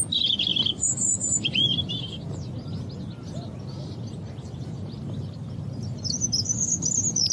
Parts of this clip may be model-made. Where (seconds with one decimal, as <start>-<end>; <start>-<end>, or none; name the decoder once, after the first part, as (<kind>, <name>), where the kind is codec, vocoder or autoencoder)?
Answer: 0.5-1.9 (vocoder, BigVGAN v2)